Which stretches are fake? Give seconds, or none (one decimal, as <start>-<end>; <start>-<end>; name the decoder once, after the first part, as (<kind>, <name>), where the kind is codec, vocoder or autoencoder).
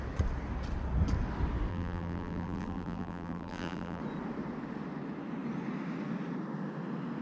1.7-4.0 (vocoder, BigVGAN v2)